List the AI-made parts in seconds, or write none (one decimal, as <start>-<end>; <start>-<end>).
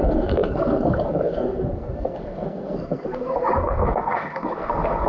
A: 0.0-5.1